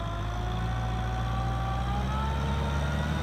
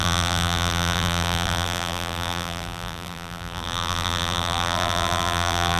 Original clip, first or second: first